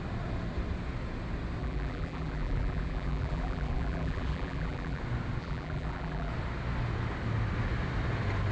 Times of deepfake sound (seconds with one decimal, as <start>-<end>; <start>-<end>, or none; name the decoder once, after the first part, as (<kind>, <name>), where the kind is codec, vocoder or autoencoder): 1.6-5.0 (vocoder, BigVGAN v2); 5.4-6.3